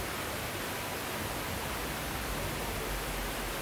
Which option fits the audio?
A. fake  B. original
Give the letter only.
B